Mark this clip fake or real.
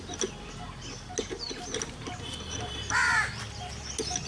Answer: real